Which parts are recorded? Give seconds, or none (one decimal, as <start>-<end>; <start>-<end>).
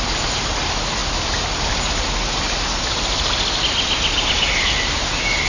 0.0-5.5